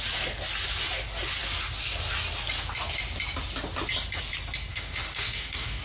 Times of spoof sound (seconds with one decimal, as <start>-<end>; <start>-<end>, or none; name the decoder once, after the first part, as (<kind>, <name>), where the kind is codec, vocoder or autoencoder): 4.7-5.8 (codec, DAC)